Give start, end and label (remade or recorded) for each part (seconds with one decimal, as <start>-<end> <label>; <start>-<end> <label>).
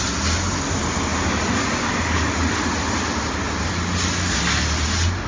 0.0-5.3 recorded